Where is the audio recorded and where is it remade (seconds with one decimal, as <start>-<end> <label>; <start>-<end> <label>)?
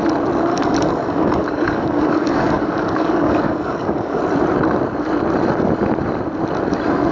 0.0-0.5 recorded; 0.5-4.2 remade; 4.2-7.1 recorded